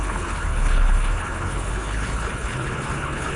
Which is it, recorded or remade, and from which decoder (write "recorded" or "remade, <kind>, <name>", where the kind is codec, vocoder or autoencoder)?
remade, codec, HILCodec